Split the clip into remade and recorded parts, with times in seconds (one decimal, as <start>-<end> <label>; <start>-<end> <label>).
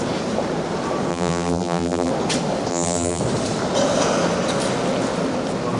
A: 0.0-1.1 recorded; 1.1-2.1 remade; 2.1-2.7 recorded; 2.7-3.2 remade; 3.2-5.8 recorded